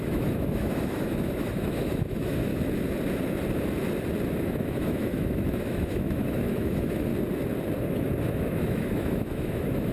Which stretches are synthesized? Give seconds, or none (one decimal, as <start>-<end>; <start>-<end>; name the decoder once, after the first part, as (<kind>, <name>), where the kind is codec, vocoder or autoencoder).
0.0-2.5 (autoencoder, DAC-VAE); 4.3-7.1; 8.3-9.9